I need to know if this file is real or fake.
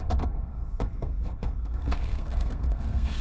fake